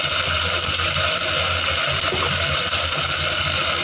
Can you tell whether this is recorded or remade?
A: recorded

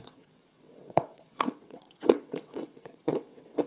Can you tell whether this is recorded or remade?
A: remade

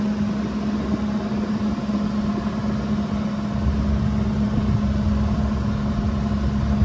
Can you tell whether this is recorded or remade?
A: recorded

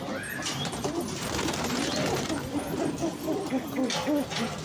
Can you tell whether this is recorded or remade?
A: recorded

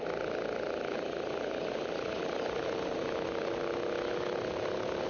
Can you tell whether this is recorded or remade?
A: recorded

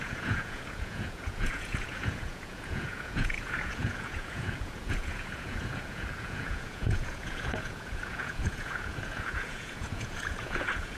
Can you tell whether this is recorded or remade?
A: remade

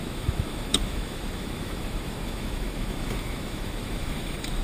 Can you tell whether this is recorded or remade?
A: remade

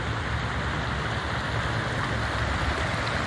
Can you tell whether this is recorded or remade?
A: recorded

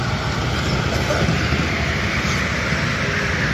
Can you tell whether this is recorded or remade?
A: recorded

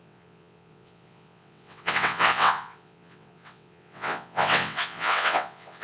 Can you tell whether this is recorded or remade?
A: remade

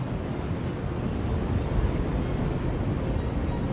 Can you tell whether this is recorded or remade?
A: recorded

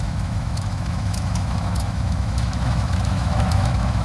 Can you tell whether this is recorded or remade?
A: remade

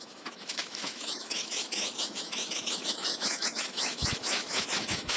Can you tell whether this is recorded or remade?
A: remade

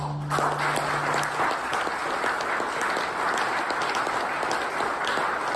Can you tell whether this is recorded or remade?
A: recorded